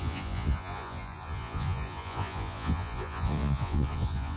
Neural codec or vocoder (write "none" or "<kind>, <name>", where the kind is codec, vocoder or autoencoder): vocoder, Vocos